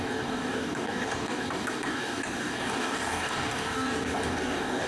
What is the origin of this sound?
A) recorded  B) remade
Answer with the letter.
B